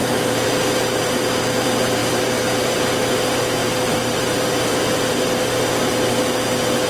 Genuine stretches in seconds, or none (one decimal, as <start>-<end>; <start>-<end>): 0.5-3.6; 5.1-6.9